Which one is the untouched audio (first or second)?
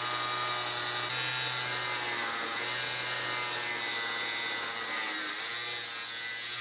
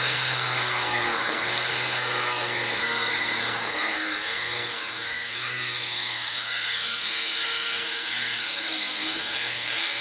first